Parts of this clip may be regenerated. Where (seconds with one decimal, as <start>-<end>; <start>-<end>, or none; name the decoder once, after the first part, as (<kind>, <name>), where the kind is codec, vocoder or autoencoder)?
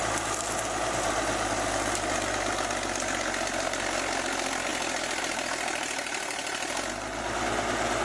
none